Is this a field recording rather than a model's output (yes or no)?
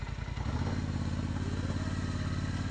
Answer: yes